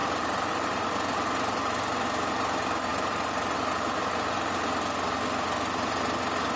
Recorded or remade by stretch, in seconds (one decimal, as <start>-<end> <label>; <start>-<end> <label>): 0.0-0.8 remade; 0.8-2.9 recorded; 2.9-3.6 remade; 3.6-6.6 recorded